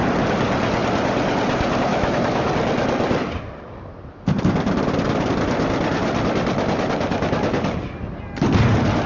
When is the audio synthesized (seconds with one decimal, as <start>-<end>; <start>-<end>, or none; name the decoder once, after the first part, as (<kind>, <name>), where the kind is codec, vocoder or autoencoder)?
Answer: 1.9-2.5 (autoencoder, DAC-VAE)